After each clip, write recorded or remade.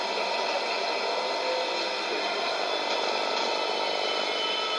recorded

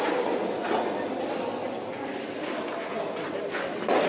recorded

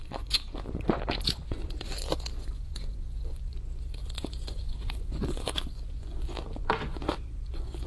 remade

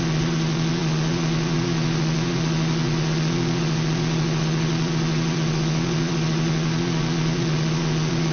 remade